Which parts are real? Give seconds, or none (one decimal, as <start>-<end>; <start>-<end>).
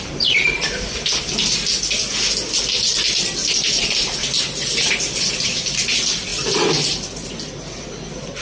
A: 0.0-8.4